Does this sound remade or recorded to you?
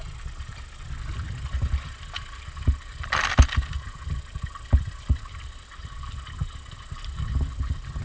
recorded